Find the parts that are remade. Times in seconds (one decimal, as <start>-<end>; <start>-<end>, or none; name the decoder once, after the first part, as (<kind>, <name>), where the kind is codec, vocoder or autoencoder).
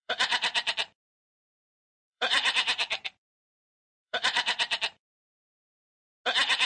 0.0-1.2 (vocoder, BigVGAN v2); 1.7-5.1